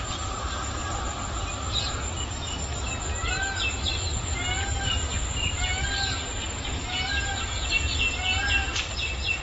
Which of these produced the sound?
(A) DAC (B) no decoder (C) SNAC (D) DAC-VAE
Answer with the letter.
B